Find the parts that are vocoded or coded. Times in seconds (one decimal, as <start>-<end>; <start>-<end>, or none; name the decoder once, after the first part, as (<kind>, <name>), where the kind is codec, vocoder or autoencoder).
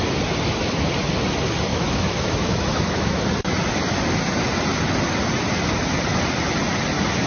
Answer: 1.7-3.2 (autoencoder, DAC-VAE)